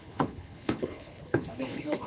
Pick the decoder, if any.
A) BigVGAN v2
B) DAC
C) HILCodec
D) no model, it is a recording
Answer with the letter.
C